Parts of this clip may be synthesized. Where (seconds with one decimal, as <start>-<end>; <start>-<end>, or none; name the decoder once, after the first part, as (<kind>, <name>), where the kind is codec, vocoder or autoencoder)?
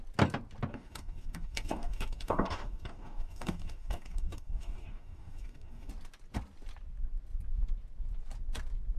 0.7-5.9 (codec, DAC)